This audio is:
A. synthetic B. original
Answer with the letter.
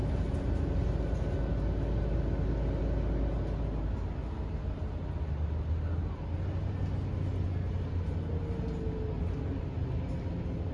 B